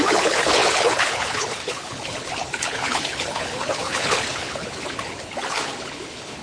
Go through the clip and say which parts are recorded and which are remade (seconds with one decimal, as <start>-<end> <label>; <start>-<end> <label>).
0.0-6.4 remade